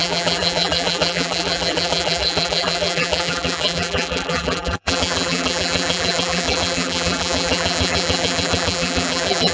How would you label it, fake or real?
fake